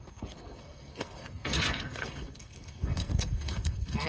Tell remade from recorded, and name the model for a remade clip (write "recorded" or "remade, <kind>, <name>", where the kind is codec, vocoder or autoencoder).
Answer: remade, codec, SNAC